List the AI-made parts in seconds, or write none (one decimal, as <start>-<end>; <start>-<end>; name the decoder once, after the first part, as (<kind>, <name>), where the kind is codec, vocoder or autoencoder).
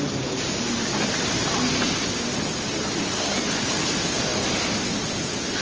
none